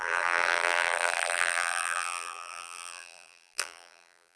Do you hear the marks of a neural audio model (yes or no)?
yes